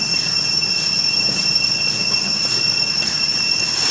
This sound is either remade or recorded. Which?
recorded